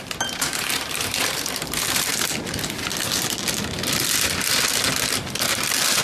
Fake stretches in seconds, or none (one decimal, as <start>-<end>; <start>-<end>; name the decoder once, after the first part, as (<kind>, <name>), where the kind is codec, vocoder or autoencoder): 0.0-2.1 (vocoder, BigVGAN v2)